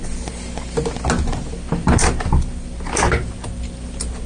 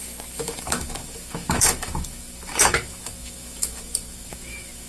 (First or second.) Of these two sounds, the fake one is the second